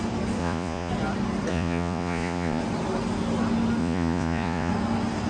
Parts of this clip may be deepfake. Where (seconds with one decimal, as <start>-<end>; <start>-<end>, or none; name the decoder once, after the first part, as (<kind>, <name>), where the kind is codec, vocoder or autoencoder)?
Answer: 0.4-0.9 (vocoder, Vocos); 1.5-2.6; 3.8-4.7